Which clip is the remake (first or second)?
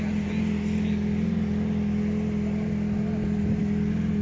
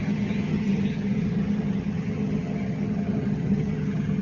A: second